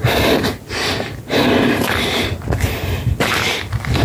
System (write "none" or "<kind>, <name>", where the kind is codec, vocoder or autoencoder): none